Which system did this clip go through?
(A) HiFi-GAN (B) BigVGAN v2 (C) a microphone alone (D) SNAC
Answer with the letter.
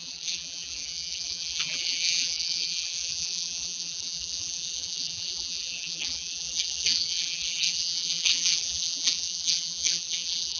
B